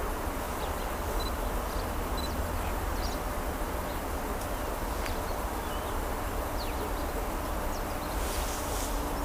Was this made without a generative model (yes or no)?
yes